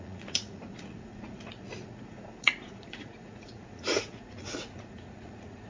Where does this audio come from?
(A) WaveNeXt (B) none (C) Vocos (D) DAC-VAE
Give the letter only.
C